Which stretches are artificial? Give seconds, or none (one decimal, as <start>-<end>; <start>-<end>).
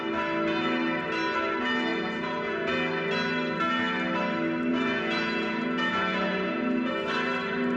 1.9-2.7; 4.7-6.9